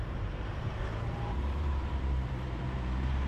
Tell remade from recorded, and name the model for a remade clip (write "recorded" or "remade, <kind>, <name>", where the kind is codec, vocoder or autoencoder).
remade, vocoder, BigVGAN v2